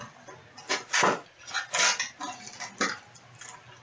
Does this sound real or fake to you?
real